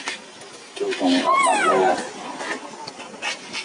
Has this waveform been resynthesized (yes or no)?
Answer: no